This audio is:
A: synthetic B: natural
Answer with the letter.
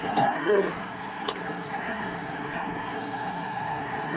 A